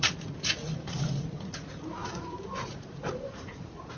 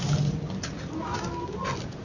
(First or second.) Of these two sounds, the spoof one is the first